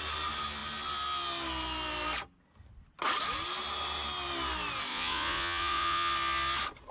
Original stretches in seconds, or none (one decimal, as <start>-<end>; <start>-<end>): 0.0-4.9; 6.1-6.9